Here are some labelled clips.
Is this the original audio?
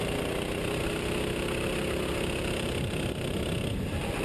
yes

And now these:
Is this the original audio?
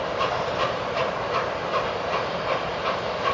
yes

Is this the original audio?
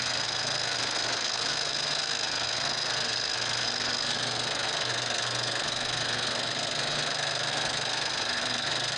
no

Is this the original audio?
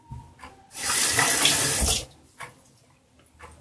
yes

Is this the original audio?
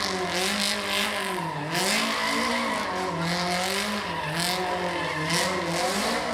yes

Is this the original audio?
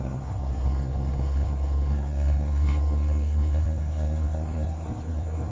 no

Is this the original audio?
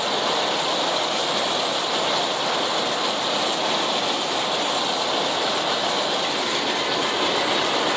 yes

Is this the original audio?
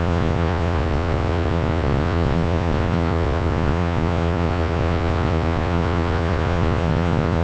no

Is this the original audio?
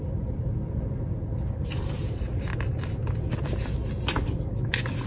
yes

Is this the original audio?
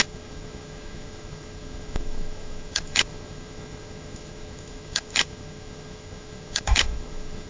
no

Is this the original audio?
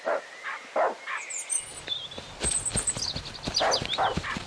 yes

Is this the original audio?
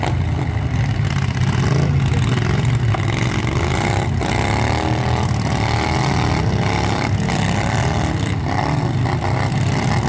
yes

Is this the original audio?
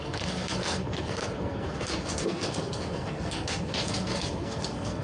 no